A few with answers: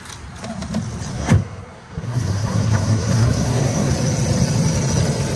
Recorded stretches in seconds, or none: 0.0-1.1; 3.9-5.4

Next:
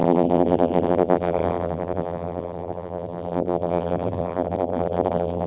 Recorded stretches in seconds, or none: none

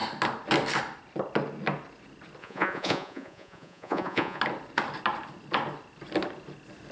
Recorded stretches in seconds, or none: 0.0-2.4; 4.4-6.9